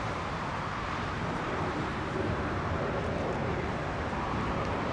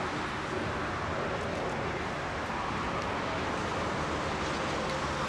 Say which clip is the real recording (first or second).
second